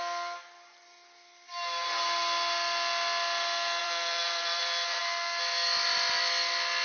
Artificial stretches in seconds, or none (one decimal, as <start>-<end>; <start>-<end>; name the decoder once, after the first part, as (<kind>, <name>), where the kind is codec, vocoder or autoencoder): 3.8-5.0 (vocoder, BigVGAN v2)